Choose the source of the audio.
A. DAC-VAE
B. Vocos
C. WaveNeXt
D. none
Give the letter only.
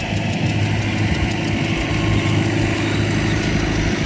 D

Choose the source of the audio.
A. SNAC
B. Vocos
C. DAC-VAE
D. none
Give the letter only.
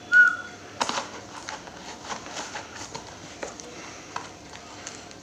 D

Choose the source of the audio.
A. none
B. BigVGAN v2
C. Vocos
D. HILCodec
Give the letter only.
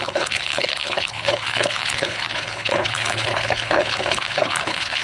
D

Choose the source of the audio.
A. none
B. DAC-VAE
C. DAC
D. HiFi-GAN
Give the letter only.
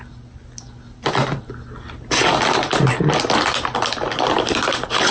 A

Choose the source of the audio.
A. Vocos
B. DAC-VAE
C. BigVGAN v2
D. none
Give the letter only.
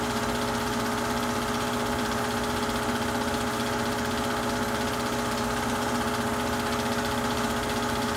D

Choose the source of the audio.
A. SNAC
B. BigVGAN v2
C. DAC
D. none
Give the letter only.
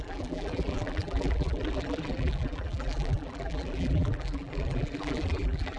B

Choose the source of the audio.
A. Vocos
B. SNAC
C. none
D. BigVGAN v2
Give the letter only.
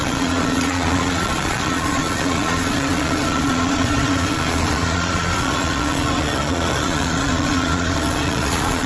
A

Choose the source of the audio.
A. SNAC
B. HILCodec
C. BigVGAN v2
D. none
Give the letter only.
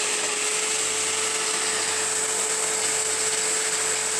D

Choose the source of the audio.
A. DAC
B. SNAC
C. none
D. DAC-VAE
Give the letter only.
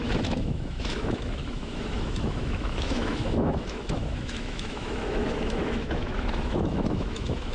D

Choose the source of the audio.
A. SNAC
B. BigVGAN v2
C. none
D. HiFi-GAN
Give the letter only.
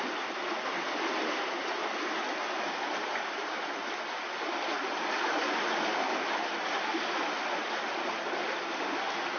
C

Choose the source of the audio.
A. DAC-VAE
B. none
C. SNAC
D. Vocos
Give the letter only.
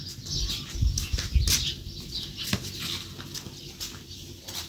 B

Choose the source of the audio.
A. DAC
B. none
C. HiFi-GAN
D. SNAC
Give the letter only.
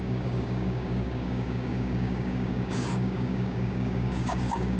A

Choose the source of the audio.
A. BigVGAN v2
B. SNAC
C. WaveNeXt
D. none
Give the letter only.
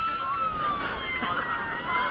D